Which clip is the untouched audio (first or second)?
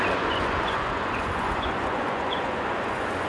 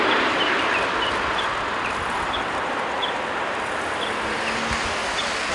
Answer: second